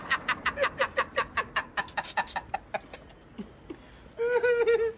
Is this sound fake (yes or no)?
no